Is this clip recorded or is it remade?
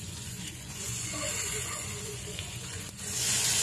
remade